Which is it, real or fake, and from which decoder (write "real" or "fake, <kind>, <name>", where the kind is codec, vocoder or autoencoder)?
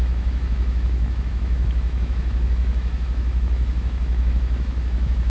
fake, autoencoder, DAC-VAE